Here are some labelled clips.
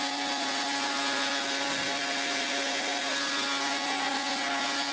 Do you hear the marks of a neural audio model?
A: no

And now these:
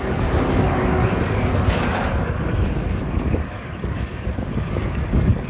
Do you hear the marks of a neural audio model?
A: yes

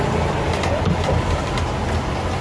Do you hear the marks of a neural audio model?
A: no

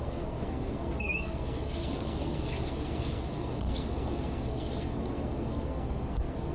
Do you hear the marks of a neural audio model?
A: yes